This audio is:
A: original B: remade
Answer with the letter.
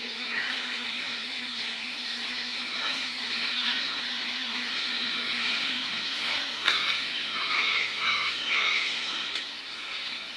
B